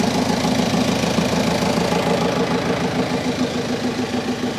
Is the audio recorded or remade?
recorded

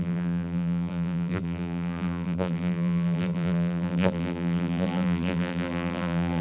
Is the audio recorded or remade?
remade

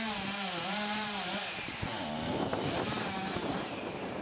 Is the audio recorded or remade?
remade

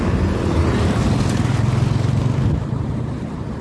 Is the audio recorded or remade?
remade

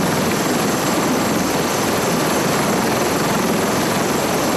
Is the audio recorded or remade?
recorded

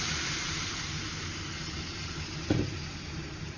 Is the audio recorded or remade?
remade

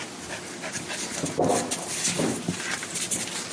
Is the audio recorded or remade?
recorded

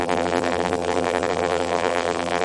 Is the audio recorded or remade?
remade